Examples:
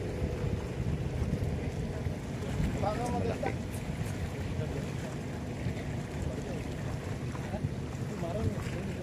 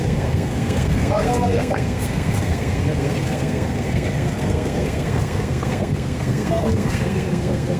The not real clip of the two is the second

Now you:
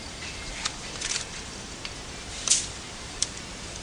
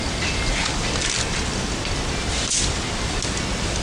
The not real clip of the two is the first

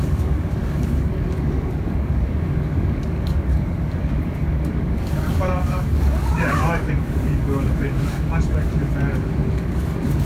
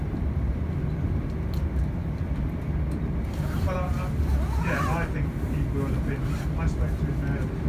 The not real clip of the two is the first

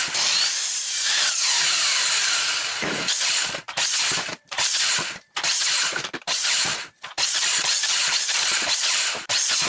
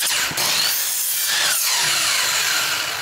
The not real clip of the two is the first